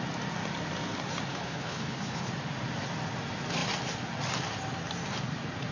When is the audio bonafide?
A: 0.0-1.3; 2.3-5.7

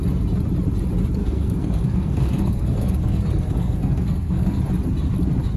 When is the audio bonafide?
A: 0.0-1.2; 4.6-5.6

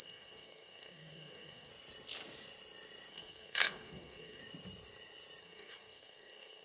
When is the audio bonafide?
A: 1.7-3.1; 4.4-5.4

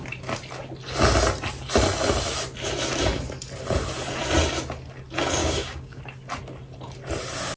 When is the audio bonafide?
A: 0.0-5.4; 6.0-7.6